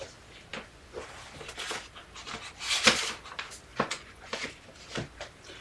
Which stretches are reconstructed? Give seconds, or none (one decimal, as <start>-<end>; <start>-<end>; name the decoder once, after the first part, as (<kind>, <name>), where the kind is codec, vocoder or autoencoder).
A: 0.5-1.1 (vocoder, Vocos); 3.7-4.5